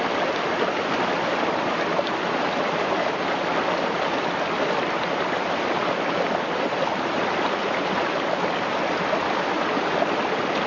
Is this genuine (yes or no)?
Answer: yes